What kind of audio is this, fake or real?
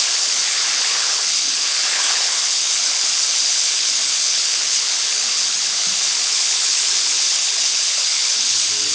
fake